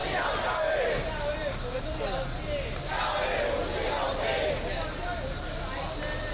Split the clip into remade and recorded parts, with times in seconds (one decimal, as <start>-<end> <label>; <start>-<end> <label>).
0.0-6.3 recorded